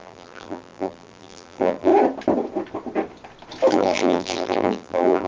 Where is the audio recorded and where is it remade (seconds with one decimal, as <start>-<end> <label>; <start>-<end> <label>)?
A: 0.0-1.9 remade; 1.9-3.7 recorded; 3.7-5.3 remade

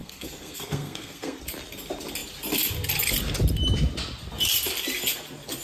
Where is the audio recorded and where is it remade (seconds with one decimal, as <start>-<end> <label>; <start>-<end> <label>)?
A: 0.0-1.4 remade; 1.4-5.6 recorded